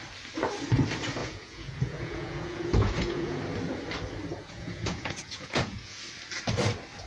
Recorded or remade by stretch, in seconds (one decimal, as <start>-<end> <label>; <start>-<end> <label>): 0.0-1.2 recorded; 1.2-3.4 remade; 3.4-4.3 recorded; 4.3-6.0 remade; 6.0-7.1 recorded